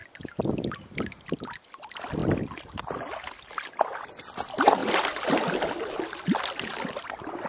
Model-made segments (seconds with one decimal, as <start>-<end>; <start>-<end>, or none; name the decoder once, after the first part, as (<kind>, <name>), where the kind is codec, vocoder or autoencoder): 4.8-5.3 (vocoder, BigVGAN v2)